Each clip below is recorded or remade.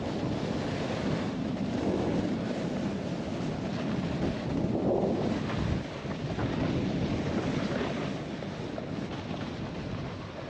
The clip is recorded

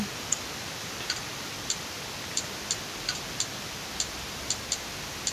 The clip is recorded